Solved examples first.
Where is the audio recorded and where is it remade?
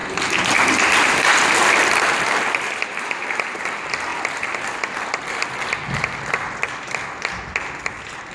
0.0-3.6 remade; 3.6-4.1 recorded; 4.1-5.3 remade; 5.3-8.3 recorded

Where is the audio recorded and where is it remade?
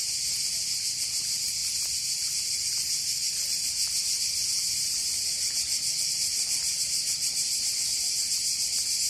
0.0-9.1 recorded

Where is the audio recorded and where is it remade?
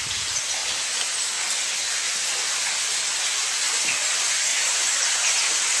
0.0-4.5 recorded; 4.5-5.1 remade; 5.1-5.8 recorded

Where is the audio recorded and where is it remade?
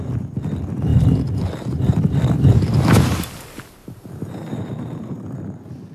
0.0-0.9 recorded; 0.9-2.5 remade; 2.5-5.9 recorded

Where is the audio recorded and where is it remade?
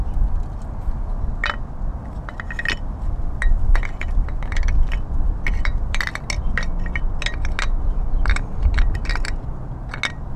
0.0-3.4 recorded; 3.4-6.0 remade; 6.0-8.2 recorded; 8.2-9.6 remade; 9.6-10.4 recorded